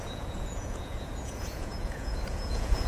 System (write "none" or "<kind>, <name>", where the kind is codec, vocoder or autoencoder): vocoder, Vocos